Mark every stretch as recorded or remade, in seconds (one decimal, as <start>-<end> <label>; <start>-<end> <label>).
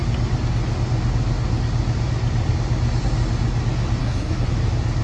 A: 0.0-4.0 recorded; 4.0-4.5 remade; 4.5-5.0 recorded